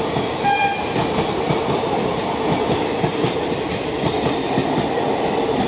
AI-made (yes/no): no